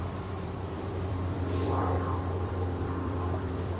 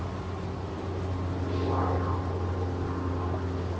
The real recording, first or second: second